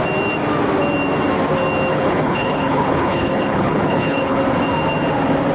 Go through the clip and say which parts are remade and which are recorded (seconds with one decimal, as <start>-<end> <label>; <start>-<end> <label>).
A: 0.0-1.9 recorded; 1.9-4.4 remade; 4.4-5.5 recorded